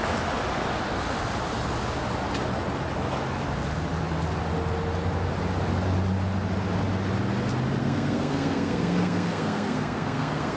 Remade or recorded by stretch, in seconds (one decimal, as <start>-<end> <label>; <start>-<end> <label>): 0.0-7.8 recorded; 7.8-10.6 remade

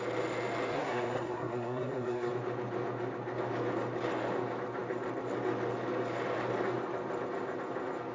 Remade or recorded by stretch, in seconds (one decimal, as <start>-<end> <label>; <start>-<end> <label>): 0.0-0.7 recorded; 0.7-2.3 remade; 2.3-8.1 recorded

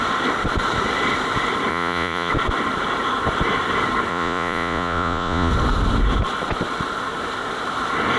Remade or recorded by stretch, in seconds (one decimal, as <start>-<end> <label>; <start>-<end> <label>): 0.0-1.7 recorded; 1.7-2.3 remade; 2.3-4.1 recorded; 4.1-5.5 remade; 5.5-8.2 recorded

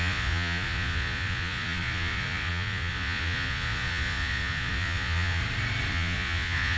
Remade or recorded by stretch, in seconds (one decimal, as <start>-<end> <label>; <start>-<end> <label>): 0.0-5.4 remade; 5.4-5.9 recorded; 5.9-6.8 remade